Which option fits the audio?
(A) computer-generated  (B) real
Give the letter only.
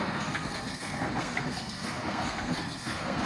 A